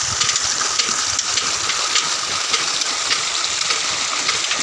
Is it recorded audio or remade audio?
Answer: recorded